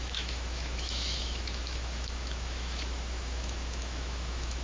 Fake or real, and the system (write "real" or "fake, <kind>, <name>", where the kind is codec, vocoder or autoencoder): fake, autoencoder, DAC-VAE